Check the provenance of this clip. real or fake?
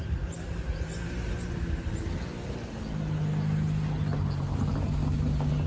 real